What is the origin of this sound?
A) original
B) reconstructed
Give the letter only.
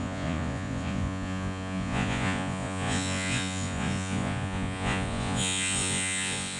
B